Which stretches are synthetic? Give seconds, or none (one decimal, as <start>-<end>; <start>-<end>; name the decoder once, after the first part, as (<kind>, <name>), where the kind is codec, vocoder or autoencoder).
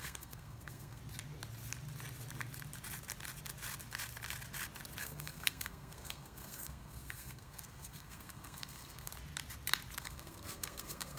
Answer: 0.0-1.0 (codec, SNAC); 5.0-9.1; 10.0-11.2